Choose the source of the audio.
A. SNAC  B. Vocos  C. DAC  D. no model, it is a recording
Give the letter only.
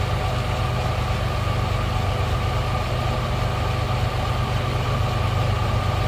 D